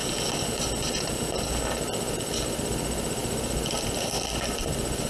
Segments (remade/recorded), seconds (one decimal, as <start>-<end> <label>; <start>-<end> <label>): 0.0-5.1 recorded